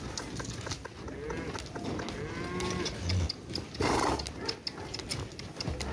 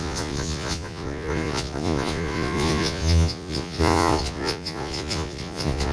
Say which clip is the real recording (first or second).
first